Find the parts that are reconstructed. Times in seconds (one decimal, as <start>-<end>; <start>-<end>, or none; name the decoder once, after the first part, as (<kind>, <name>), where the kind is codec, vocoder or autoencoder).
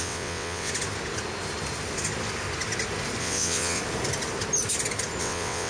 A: 0.0-0.7 (vocoder, WaveNeXt); 3.2-3.8; 5.2-5.7